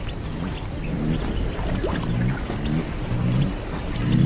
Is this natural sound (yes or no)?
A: yes